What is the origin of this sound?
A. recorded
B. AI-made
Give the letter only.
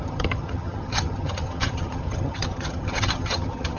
B